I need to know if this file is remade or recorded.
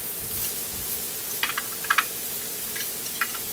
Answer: recorded